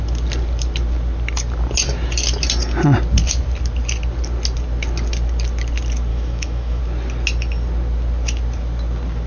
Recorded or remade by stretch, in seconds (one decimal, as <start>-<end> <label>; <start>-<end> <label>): 0.0-6.1 recorded; 6.1-6.8 remade; 6.8-9.3 recorded